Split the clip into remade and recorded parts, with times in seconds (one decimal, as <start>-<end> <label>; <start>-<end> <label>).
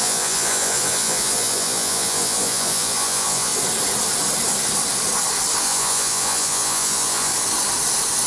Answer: 0.0-3.5 remade; 3.5-5.6 recorded; 5.6-7.3 remade; 7.3-8.3 recorded